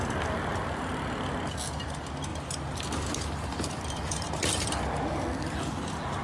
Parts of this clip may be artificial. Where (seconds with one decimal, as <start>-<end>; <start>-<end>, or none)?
2.3-4.7